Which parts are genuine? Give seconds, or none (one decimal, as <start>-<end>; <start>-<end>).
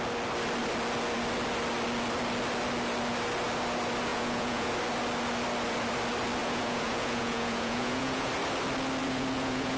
0.0-4.1; 4.7-6.4; 8.3-9.0